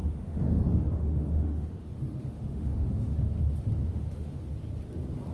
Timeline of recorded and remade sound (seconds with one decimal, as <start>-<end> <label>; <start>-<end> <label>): 0.0-3.2 remade; 3.2-3.9 recorded; 3.9-4.5 remade; 4.5-5.3 recorded